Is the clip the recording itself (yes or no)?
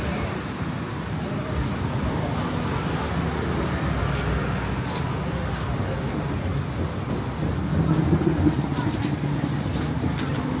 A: yes